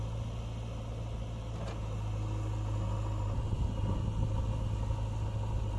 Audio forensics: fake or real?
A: real